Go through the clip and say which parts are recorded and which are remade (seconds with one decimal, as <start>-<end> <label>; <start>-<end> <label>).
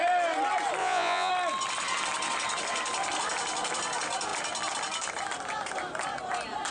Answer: 0.0-0.8 recorded; 0.8-1.3 remade; 1.3-6.7 recorded